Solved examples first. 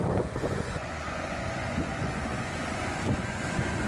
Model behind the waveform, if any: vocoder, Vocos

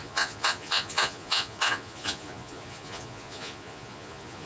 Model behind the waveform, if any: vocoder, Vocos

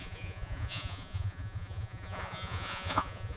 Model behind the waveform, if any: vocoder, Vocos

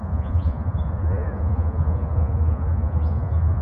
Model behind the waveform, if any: vocoder, Vocos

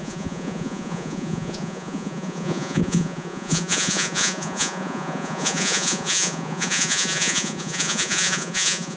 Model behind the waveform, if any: vocoder, Vocos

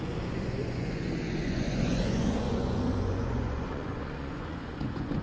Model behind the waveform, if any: vocoder, Vocos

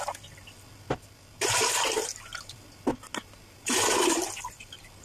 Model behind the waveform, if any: none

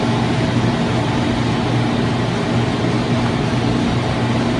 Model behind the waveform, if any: none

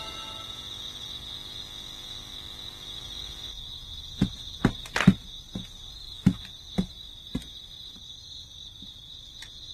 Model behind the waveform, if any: none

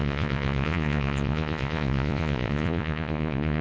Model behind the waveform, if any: vocoder, Vocos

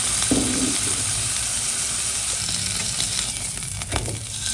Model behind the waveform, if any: none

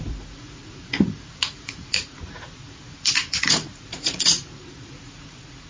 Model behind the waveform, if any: vocoder, Vocos